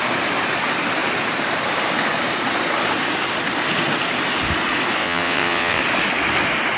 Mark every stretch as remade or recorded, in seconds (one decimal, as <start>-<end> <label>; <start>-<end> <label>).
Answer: 0.0-5.0 recorded; 5.0-5.8 remade; 5.8-6.8 recorded